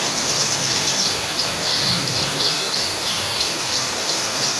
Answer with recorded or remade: remade